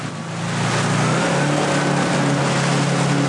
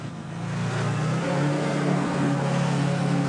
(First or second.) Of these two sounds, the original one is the first